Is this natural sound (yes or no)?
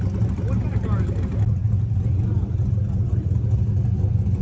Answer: yes